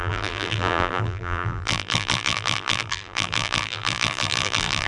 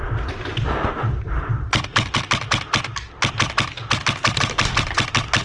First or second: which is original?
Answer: second